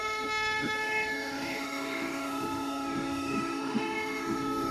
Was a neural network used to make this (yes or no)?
yes